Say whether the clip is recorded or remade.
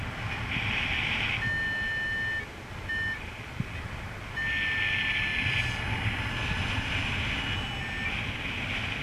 recorded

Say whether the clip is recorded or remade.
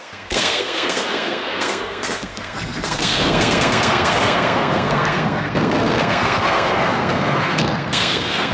remade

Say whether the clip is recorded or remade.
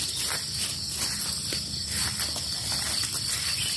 recorded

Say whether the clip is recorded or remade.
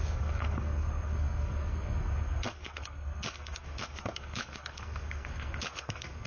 remade